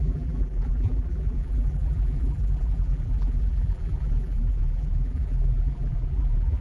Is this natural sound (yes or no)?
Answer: no